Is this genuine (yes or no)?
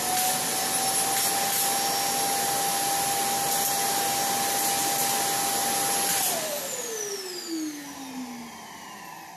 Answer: yes